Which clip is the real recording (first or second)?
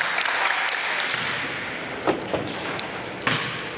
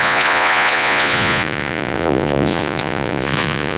first